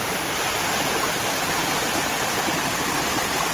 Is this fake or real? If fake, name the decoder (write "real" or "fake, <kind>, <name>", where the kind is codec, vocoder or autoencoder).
real